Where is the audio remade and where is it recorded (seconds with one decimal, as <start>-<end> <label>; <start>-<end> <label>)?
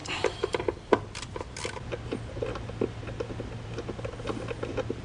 0.0-0.9 remade; 0.9-5.0 recorded